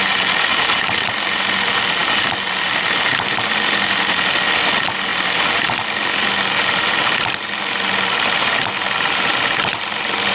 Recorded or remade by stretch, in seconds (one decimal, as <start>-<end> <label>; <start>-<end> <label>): 0.0-10.3 recorded